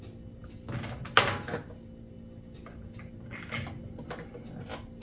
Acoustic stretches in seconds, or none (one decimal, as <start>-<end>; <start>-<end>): 0.0-5.0